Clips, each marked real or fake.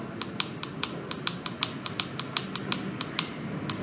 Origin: real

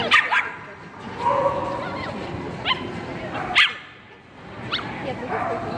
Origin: real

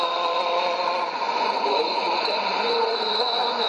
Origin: fake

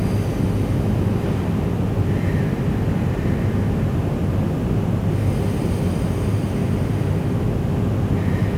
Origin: real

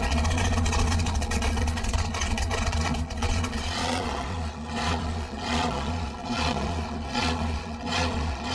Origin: fake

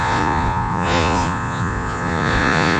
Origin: fake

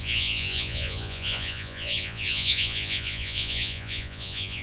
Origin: fake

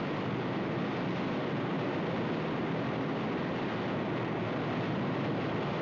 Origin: real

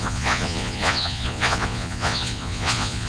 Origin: fake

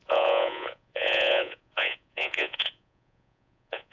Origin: fake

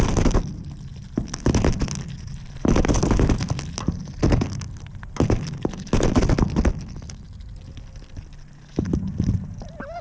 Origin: real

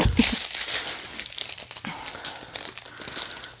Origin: real